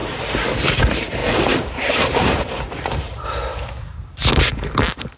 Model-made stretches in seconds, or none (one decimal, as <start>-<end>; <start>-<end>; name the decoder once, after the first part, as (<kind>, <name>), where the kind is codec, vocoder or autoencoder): 0.6-4.0 (vocoder, BigVGAN v2)